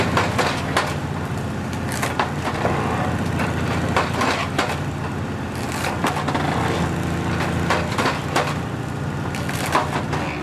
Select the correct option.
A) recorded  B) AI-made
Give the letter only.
A